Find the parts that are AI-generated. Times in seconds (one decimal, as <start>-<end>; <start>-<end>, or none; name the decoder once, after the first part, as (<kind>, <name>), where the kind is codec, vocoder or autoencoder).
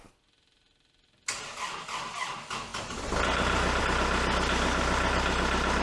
none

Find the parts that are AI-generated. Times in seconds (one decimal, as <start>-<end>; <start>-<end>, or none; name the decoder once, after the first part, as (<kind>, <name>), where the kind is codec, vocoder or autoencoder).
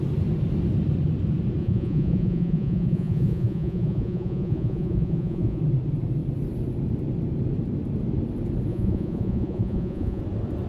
1.6-5.6 (vocoder, Vocos); 8.7-10.2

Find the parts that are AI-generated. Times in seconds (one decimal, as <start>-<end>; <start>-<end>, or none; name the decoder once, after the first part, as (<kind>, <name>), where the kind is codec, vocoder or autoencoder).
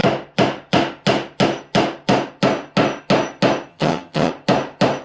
3.7-4.3 (vocoder, HiFi-GAN)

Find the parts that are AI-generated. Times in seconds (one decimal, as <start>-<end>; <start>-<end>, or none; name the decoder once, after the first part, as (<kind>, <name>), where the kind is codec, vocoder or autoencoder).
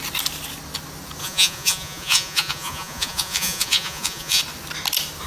1.2-4.4 (vocoder, Vocos)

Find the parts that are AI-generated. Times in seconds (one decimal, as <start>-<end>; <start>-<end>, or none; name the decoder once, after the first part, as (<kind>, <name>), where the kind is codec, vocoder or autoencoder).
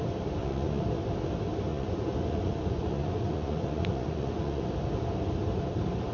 0.4-1.0 (vocoder, Vocos); 1.7-4.6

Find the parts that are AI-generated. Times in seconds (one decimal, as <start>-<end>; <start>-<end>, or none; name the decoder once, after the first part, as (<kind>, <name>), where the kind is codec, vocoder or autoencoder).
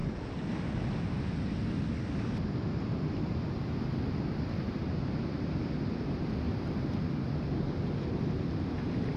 none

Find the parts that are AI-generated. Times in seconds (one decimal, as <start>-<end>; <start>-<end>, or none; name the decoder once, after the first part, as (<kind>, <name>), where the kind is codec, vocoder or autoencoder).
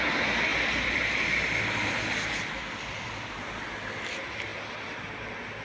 0.5-3.3 (vocoder, BigVGAN v2)